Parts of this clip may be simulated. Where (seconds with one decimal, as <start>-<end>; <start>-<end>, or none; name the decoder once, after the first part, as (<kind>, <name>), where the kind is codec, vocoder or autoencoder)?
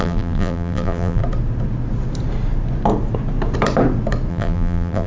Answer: 0.0-1.2 (vocoder, BigVGAN v2); 4.3-5.1